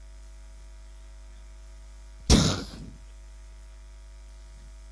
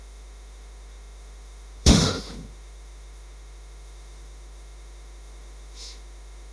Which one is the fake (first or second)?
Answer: second